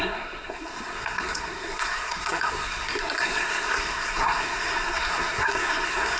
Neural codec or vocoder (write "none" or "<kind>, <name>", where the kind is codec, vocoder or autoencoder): codec, SNAC